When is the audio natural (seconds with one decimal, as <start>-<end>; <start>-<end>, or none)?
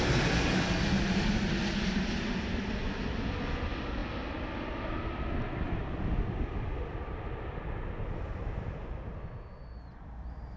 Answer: 0.0-10.6